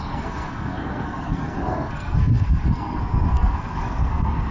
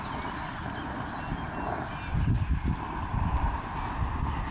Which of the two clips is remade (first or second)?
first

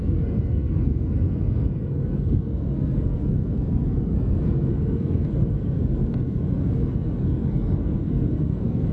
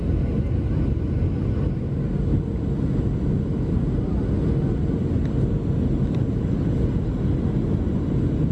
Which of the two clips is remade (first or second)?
first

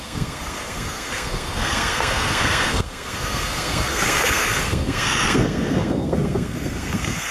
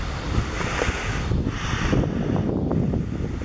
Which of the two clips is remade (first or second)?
first